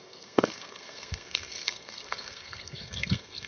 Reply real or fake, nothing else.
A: fake